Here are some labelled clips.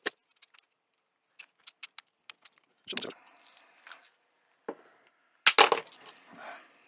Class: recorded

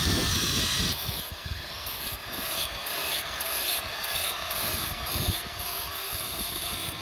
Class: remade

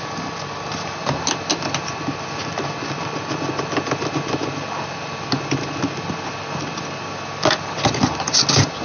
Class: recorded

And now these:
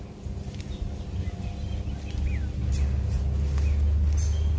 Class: recorded